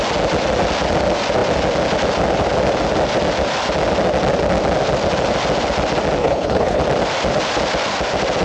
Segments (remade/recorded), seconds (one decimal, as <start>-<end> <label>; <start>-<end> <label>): 0.0-6.2 recorded; 6.2-6.8 remade; 6.8-8.4 recorded